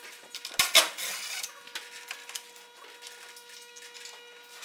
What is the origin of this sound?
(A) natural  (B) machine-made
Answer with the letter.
A